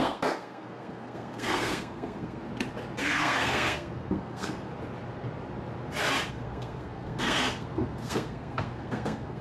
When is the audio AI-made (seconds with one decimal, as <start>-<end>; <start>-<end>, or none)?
0.0-2.4; 3.0-4.7; 6.3-9.4